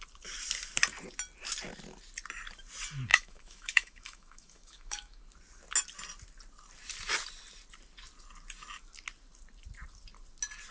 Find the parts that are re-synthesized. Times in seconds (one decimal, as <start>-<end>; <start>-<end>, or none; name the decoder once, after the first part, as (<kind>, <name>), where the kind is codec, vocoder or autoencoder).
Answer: 3.1-5.2 (autoencoder, DAC-VAE)